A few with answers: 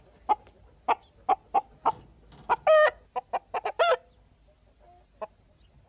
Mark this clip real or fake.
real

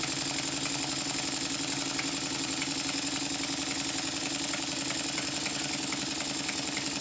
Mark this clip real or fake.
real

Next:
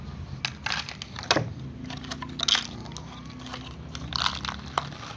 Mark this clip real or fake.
real